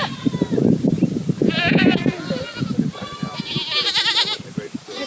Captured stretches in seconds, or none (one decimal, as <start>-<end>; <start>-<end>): 0.0-5.1